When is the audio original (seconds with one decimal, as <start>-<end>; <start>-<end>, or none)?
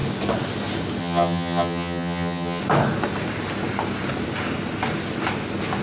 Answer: 0.0-1.0; 2.6-5.8